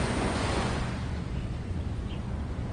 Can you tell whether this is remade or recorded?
remade